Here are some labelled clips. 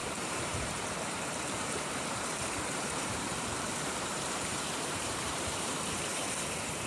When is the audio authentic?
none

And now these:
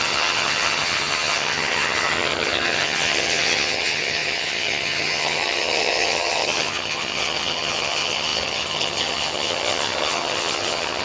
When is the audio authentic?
none